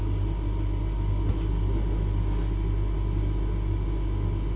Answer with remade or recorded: recorded